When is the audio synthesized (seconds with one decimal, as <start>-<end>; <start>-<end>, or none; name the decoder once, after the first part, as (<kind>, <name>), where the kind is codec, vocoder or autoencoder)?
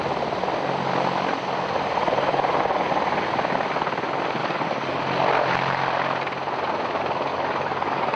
4.4-5.0 (codec, DAC); 7.3-8.2